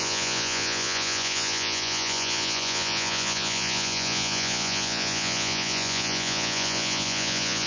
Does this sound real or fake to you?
fake